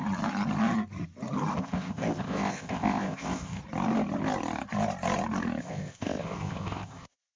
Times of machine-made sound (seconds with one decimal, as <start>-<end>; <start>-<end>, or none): 1.5-3.6; 5.6-7.4